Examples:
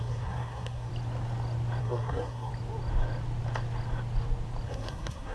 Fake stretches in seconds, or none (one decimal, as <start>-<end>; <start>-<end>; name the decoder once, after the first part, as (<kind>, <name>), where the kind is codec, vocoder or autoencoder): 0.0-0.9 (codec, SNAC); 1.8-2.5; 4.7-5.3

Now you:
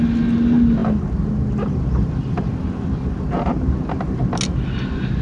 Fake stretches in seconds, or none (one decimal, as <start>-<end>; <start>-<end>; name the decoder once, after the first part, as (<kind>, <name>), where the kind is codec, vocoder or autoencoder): none

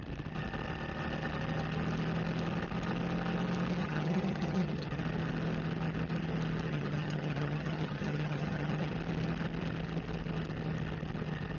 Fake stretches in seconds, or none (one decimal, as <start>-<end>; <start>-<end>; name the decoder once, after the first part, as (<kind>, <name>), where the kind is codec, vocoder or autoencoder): 3.8-5.0 (vocoder, HiFi-GAN); 6.7-8.9